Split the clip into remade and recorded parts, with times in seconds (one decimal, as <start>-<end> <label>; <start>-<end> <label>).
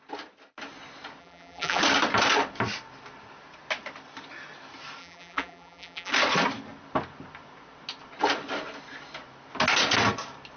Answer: 0.0-1.2 recorded; 1.2-1.8 remade; 1.8-5.0 recorded; 5.0-6.1 remade; 6.1-10.6 recorded